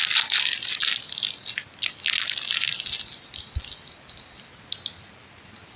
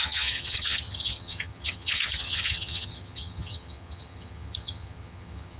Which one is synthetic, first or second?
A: second